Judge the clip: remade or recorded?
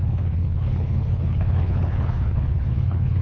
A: remade